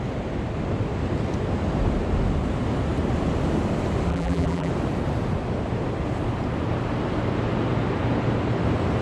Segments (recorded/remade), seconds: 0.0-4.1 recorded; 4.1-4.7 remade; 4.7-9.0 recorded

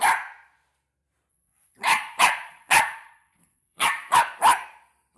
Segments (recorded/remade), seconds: 0.0-1.3 recorded; 1.3-4.4 remade; 4.4-5.2 recorded

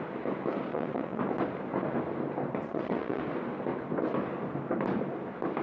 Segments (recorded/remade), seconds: 0.0-0.7 recorded; 0.7-1.2 remade; 1.2-2.6 recorded; 2.6-3.2 remade; 3.2-5.6 recorded

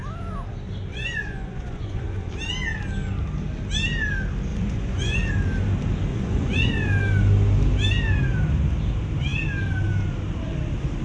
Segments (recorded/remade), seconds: 0.0-0.9 recorded; 0.9-2.3 remade; 2.3-4.5 recorded; 4.5-5.3 remade; 5.3-6.1 recorded; 6.1-6.7 remade; 6.7-11.0 recorded

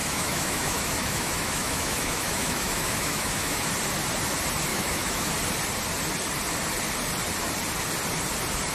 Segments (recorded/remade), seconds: 0.0-3.7 remade; 3.7-4.7 recorded; 4.7-5.3 remade; 5.3-8.7 recorded

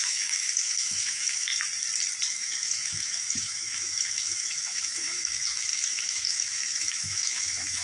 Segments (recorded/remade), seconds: 0.0-1.5 remade; 1.5-2.3 recorded; 2.3-7.8 remade

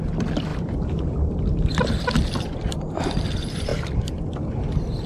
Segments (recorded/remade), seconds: 0.0-3.7 remade; 3.7-5.1 recorded

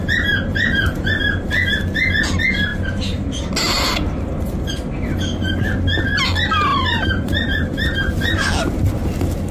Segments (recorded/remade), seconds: 0.0-1.2 remade; 1.2-2.7 recorded; 2.7-3.5 remade; 3.5-6.7 recorded; 6.7-8.5 remade; 8.5-9.5 recorded